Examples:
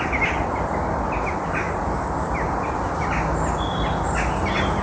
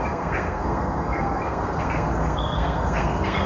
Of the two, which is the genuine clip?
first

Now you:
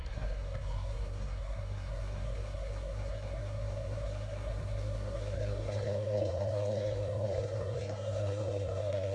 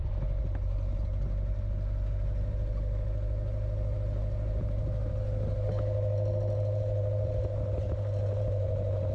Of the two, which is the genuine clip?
second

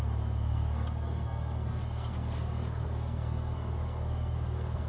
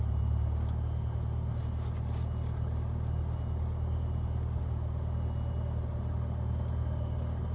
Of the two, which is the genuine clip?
second